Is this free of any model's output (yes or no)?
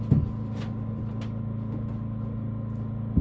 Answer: yes